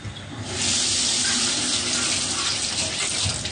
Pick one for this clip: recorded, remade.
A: recorded